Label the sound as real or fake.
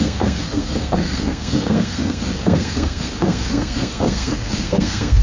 fake